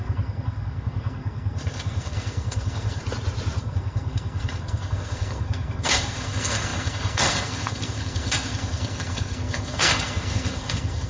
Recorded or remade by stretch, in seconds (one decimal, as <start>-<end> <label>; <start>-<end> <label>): 0.0-3.0 remade; 3.0-3.6 recorded; 3.6-11.1 remade